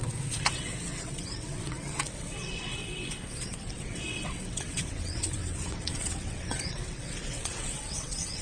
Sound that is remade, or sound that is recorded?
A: remade